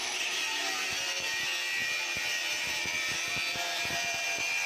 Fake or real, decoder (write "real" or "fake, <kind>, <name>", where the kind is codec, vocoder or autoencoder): fake, vocoder, BigVGAN v2